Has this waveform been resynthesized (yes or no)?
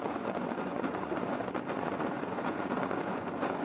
yes